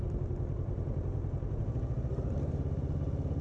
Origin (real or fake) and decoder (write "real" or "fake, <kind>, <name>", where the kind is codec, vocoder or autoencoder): real